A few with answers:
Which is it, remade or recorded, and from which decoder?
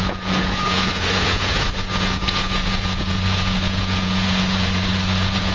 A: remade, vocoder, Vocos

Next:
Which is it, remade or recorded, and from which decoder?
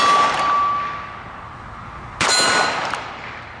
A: recorded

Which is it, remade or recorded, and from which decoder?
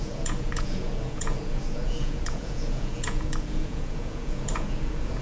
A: remade, vocoder, Vocos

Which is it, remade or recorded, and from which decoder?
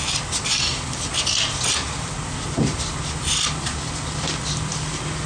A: recorded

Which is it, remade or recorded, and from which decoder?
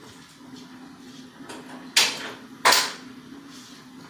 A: recorded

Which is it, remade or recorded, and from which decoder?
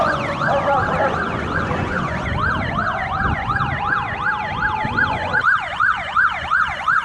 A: remade, vocoder, Vocos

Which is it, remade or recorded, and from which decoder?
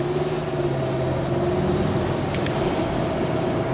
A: recorded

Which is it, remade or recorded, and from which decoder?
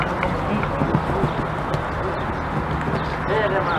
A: recorded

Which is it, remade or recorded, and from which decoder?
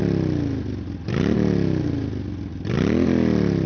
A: recorded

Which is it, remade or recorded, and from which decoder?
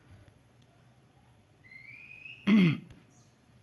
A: remade, vocoder, Vocos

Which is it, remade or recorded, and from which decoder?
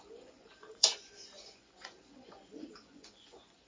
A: remade, vocoder, Vocos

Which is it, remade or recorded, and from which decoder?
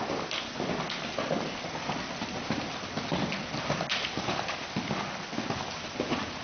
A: recorded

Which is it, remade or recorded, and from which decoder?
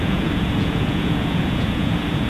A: remade, vocoder, Vocos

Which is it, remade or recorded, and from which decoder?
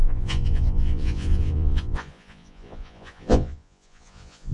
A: remade, vocoder, Vocos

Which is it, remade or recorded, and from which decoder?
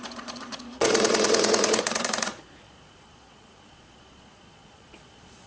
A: remade, vocoder, Vocos